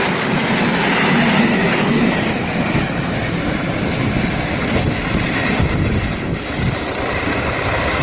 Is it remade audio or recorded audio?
recorded